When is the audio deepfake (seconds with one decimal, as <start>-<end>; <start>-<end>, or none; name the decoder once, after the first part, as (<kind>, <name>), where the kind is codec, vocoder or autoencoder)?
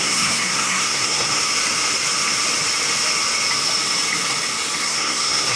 0.0-1.4 (codec, SNAC); 4.8-5.6